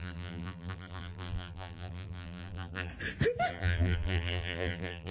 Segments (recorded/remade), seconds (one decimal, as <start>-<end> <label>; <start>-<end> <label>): 0.0-2.9 remade; 2.9-3.5 recorded; 3.5-5.1 remade